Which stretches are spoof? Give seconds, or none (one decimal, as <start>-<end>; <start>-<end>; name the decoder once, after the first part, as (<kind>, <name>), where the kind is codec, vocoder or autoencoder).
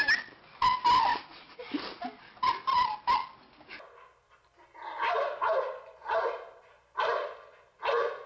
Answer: 1.1-1.7 (vocoder, Vocos)